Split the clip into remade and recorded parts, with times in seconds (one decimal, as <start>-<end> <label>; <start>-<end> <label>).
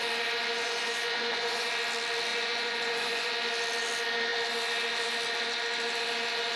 0.0-0.6 recorded; 0.6-1.7 remade; 1.7-2.3 recorded; 2.3-3.3 remade; 3.3-6.6 recorded